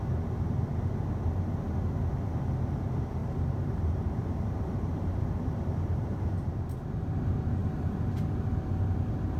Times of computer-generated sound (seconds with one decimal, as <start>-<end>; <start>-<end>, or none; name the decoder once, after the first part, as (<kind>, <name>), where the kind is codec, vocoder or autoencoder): 3.2-6.5 (vocoder, BigVGAN v2); 7.6-8.1